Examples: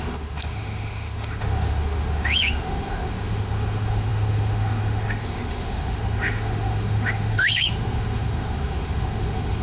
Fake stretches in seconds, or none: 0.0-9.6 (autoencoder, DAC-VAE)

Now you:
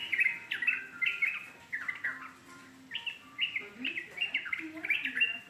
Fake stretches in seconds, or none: none

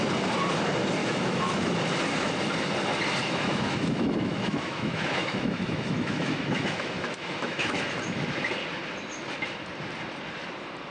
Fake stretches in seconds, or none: 1.0-1.7 (autoencoder, DAC-VAE); 3.2-7.8

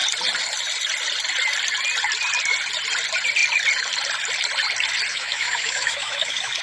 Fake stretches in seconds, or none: 5.1-6.6 (autoencoder, DAC-VAE)